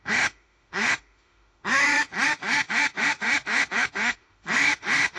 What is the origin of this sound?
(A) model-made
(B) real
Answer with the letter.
A